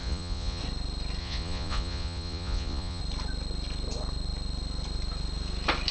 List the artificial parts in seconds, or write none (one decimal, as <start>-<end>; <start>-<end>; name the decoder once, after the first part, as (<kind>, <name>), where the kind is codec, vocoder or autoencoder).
0.0-0.6 (vocoder, Vocos); 1.2-3.0